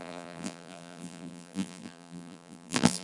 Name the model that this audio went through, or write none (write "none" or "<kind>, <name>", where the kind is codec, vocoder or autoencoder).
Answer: vocoder, BigVGAN v2